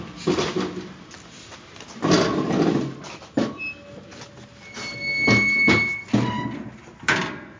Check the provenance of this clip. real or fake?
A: real